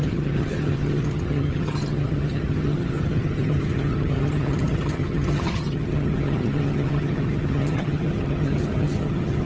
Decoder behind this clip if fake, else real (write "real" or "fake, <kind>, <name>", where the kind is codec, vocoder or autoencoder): fake, vocoder, HiFi-GAN